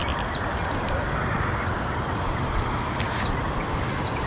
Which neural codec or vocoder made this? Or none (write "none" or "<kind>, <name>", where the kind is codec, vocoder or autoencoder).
none